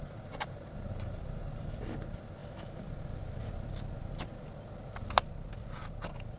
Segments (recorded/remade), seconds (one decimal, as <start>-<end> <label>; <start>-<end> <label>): 0.0-2.4 remade; 2.4-6.4 recorded